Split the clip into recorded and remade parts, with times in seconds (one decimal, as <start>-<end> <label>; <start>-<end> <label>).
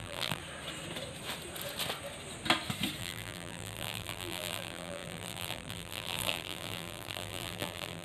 0.0-0.4 remade; 0.4-3.0 recorded; 3.0-8.0 remade